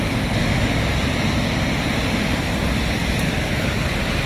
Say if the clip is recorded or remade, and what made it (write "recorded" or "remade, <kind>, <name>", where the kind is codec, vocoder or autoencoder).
recorded